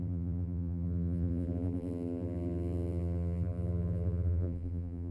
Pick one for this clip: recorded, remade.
remade